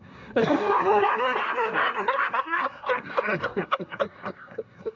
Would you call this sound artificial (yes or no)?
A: yes